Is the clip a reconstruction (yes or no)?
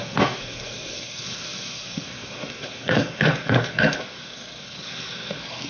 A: yes